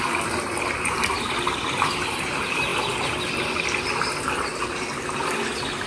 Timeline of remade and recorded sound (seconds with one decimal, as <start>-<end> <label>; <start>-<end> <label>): 0.0-5.9 recorded